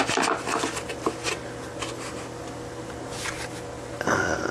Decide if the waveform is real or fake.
real